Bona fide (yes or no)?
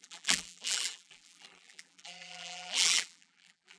no